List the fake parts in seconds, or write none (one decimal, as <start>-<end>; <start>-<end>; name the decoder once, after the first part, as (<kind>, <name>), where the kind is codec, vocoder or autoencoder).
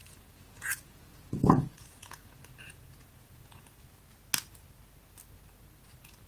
0.0-3.8 (vocoder, Vocos)